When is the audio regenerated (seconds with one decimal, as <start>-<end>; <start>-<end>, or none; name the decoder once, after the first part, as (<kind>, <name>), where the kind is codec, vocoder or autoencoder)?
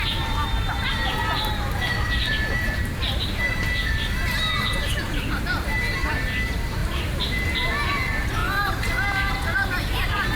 6.8-7.4 (vocoder, BigVGAN v2)